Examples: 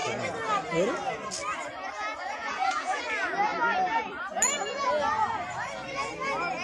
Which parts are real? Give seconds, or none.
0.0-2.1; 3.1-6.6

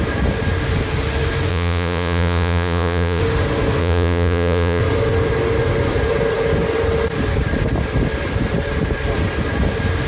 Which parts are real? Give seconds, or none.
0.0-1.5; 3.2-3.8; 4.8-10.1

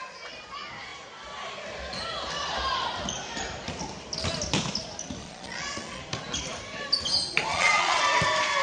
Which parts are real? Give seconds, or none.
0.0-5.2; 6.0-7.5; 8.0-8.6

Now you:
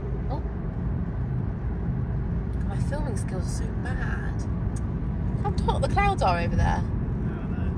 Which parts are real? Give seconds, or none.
0.0-7.8

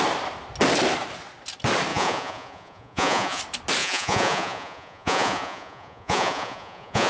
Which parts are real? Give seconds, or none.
0.0-1.9; 3.4-3.8

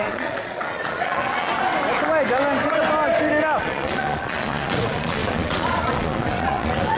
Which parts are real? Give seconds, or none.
1.5-3.6

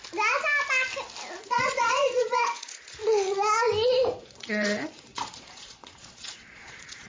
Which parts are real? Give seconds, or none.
0.0-1.4; 3.0-4.2